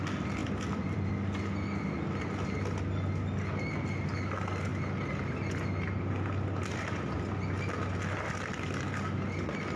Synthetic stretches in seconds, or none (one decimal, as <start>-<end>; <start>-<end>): 0.4-1.1

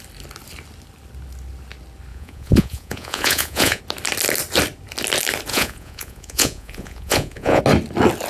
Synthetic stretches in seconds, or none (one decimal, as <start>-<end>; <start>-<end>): 2.1-3.8; 5.5-7.6

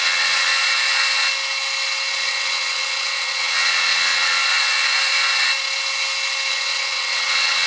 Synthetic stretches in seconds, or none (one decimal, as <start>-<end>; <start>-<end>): 0.0-0.5; 2.1-4.4; 6.5-7.7

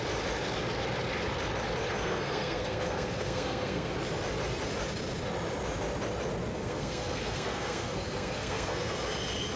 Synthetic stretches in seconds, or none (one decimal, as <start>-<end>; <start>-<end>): 1.9-3.9; 6.5-9.0

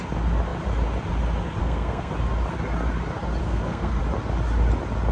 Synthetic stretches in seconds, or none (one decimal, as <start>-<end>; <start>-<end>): 1.6-2.1; 3.4-4.0